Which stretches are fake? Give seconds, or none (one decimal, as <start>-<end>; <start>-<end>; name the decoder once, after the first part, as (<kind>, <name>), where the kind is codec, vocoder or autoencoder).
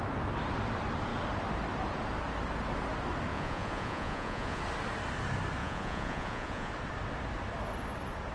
3.3-4.6 (vocoder, Vocos); 5.6-6.7